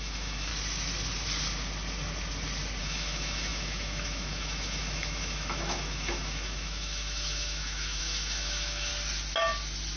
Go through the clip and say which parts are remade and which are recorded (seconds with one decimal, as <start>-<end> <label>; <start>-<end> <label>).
0.0-0.5 remade; 0.5-2.8 recorded; 2.8-8.9 remade; 8.9-10.0 recorded